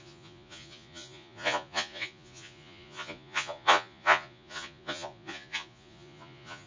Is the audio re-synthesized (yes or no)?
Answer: yes